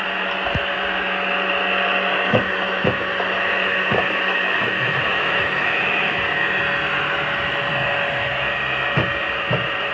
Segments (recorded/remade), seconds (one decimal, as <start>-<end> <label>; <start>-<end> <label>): 0.0-2.3 recorded; 2.3-6.1 remade; 6.1-9.9 recorded

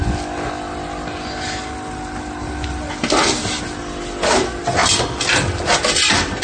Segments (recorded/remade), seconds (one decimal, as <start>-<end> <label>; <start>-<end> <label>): 0.0-6.4 recorded

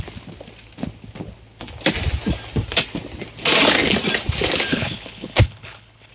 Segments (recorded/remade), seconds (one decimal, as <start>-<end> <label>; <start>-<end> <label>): 0.0-4.7 recorded; 4.7-6.1 remade

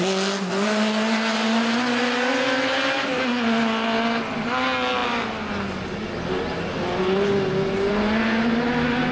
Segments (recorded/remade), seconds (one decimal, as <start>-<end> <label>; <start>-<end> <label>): 0.0-9.1 recorded